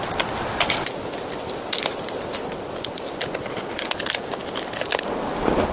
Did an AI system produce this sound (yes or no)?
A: no